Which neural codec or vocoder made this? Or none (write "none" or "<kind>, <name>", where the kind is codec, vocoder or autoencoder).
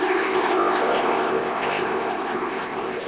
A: codec, ZipCodec